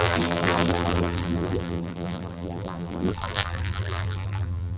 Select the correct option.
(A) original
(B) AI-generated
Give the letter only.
B